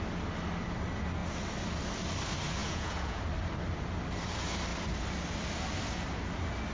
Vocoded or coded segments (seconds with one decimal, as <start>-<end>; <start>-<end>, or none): 2.6-3.2